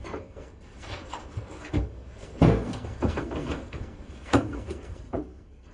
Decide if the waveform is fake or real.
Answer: fake